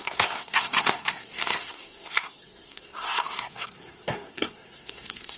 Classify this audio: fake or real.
fake